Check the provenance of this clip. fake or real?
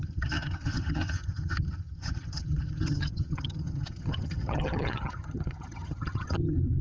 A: fake